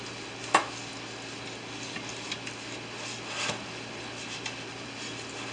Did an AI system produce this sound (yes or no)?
no